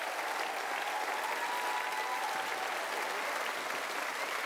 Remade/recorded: recorded